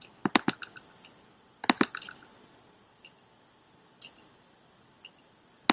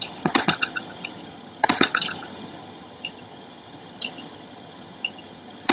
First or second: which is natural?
first